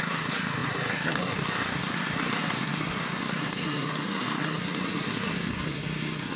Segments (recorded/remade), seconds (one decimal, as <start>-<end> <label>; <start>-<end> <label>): 0.0-6.4 remade